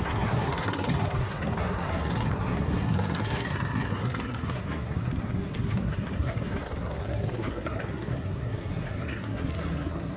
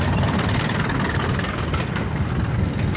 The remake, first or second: first